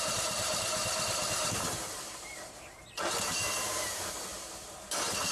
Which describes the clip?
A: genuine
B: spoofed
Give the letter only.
B